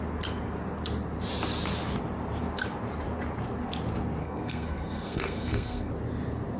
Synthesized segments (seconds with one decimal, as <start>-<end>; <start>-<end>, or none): 4.2-5.9